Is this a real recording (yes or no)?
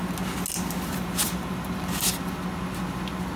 yes